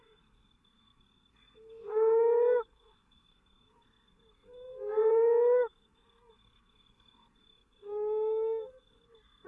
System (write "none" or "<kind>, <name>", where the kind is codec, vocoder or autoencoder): codec, SNAC